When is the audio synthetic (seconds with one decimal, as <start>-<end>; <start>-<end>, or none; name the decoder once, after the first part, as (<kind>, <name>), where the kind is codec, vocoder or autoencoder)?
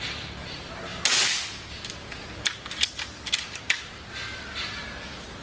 none